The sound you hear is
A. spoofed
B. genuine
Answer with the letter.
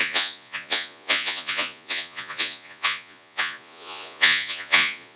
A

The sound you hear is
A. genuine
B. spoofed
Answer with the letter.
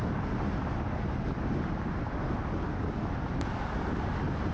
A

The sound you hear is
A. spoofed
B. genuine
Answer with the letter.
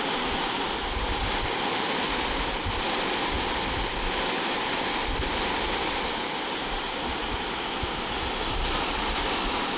B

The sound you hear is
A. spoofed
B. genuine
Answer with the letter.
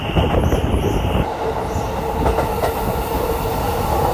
B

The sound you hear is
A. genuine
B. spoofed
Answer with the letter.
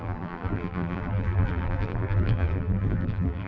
B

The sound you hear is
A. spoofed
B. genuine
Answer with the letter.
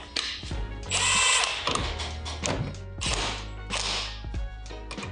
B